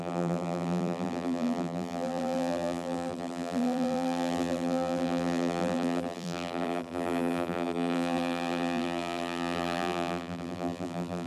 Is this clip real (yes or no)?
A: no